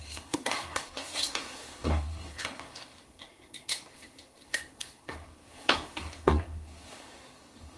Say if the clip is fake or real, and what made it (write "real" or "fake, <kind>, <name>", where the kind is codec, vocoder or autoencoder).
fake, codec, SNAC